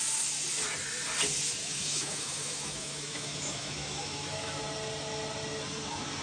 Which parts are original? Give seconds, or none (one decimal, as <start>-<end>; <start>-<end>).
0.0-1.6; 4.6-6.2